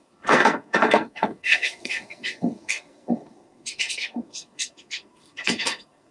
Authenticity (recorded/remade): remade